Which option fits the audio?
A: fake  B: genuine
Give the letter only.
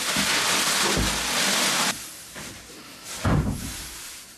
B